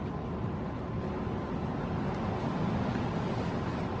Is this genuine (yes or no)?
yes